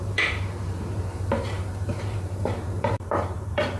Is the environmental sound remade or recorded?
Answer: remade